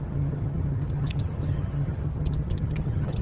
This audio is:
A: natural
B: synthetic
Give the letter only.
B